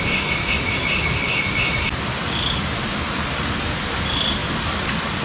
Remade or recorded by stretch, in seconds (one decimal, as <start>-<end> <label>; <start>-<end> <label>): 0.0-5.2 recorded